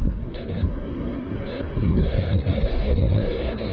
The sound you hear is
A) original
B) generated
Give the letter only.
B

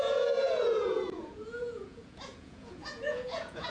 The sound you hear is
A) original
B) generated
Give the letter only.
B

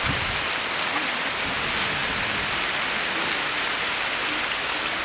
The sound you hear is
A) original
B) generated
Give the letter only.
A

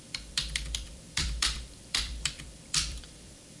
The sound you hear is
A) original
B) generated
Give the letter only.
B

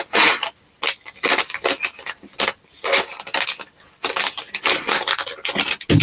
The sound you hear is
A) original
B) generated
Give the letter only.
A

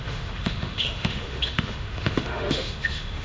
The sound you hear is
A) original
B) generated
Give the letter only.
B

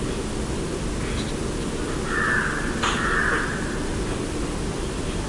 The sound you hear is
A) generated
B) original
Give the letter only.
B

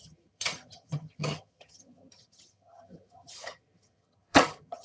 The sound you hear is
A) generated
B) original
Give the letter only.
A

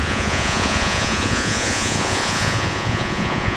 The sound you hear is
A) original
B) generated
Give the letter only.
B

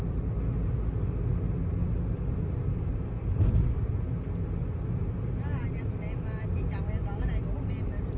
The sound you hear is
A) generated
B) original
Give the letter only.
B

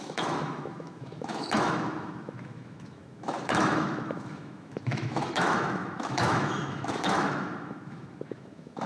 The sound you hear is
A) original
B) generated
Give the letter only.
B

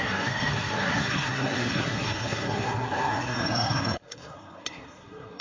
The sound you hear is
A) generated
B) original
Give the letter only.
A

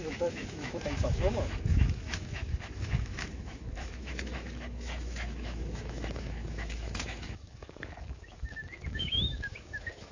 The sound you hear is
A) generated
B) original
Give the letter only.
A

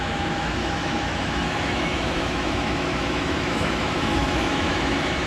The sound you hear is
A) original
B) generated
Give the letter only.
B